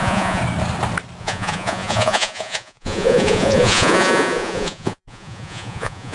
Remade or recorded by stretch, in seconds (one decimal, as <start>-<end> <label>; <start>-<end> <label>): 0.0-0.4 remade; 0.4-1.2 recorded; 1.2-6.1 remade